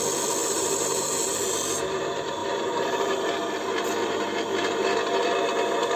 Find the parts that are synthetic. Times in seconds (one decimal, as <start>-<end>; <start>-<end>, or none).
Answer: 0.4-2.0; 2.4-3.3

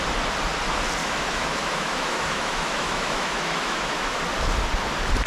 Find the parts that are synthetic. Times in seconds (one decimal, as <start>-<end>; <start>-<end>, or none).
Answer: 1.0-4.2

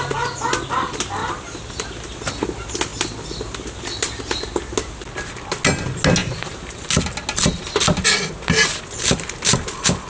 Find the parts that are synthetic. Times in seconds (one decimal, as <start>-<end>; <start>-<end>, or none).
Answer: 6.2-6.9

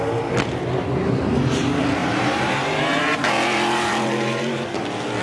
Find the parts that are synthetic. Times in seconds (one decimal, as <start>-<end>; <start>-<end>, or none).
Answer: 2.0-4.4

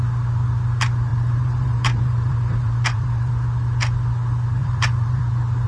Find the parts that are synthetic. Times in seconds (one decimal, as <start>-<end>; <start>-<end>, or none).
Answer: 1.1-3.3; 4.6-5.2